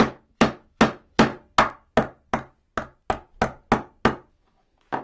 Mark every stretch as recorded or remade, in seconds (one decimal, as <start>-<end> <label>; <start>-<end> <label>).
0.0-1.3 remade; 1.3-4.3 recorded; 4.3-5.0 remade